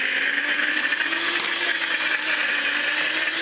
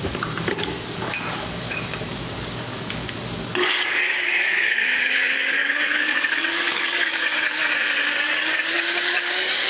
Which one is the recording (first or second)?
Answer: first